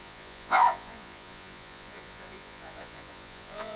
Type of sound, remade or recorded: remade